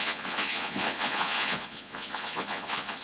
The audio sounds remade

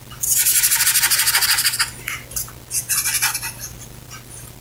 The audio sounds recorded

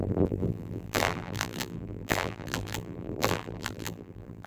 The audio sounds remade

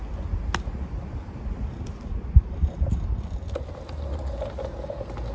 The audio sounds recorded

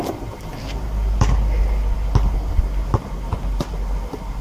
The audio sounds recorded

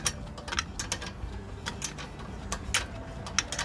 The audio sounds recorded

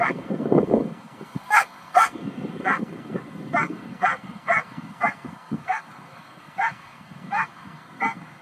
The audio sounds remade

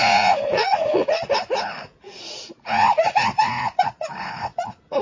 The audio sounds remade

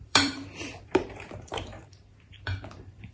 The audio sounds remade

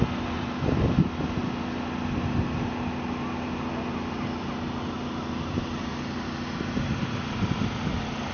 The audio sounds recorded